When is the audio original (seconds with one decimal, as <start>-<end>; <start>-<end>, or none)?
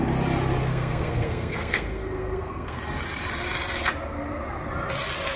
0.0-0.7; 2.8-5.4